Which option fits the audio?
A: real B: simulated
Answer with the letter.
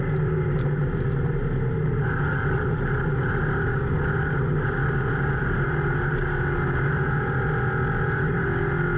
A